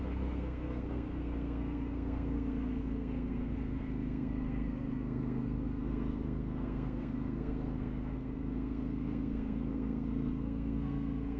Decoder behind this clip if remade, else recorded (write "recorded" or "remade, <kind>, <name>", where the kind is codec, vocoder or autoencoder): remade, codec, SNAC